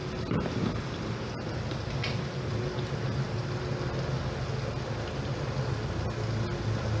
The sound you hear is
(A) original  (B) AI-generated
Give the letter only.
A